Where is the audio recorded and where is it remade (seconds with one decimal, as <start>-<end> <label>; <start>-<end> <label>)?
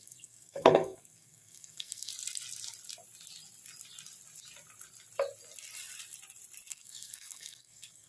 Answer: 0.0-2.1 remade; 2.1-6.7 recorded; 6.7-8.1 remade